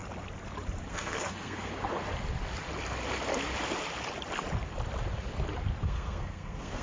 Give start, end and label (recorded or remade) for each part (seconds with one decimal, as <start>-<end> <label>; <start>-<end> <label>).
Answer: 0.0-0.9 recorded; 0.9-1.7 remade; 1.7-5.8 recorded; 5.8-6.8 remade